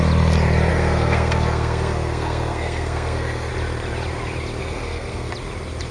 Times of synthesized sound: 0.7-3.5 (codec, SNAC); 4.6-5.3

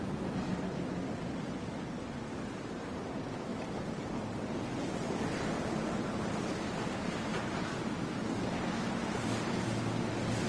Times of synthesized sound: 3.5-4.1 (vocoder, BigVGAN v2); 7.3-7.9